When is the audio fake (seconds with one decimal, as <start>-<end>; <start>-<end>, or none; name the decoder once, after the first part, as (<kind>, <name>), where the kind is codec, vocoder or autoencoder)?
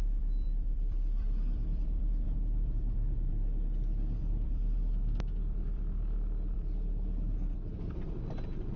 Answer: 0.0-3.3 (vocoder, BigVGAN v2); 4.2-8.8